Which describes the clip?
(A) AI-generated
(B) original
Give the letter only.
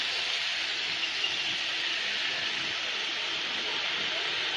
B